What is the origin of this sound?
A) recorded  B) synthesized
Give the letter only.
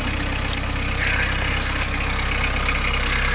A